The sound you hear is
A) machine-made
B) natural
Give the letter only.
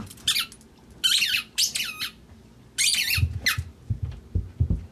B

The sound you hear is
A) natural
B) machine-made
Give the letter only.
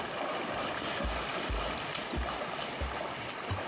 A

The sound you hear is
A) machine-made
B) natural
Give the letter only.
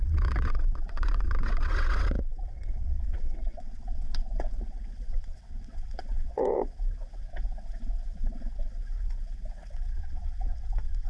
A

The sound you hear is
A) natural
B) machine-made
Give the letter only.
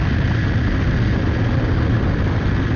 A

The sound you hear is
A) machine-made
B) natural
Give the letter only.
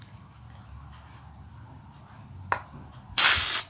B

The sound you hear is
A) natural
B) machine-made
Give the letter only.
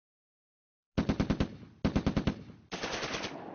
A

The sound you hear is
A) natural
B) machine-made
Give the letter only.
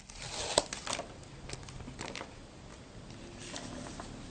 A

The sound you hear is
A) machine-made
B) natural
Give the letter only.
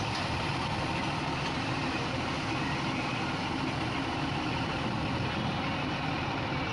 B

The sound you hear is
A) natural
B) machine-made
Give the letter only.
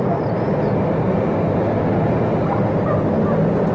A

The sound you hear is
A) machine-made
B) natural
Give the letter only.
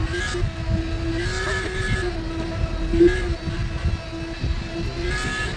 B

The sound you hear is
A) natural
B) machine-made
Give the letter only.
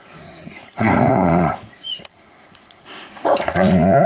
B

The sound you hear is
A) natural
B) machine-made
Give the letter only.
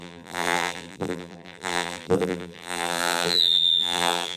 B